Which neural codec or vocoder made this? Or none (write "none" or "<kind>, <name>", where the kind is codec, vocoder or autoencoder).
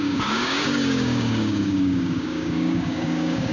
codec, DAC